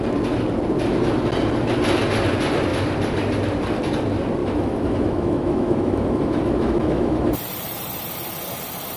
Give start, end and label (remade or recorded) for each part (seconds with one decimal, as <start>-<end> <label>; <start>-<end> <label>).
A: 0.0-4.4 recorded; 4.4-7.3 remade; 7.3-9.0 recorded